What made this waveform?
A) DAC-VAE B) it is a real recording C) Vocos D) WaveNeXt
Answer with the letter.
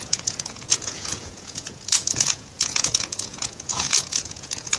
C